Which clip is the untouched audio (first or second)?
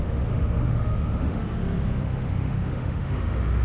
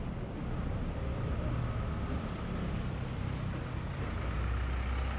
second